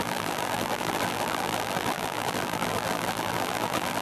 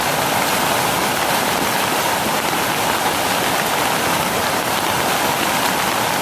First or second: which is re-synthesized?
first